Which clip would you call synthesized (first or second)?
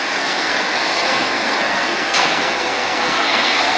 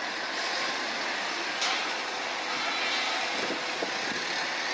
first